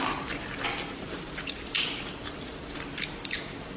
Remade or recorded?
remade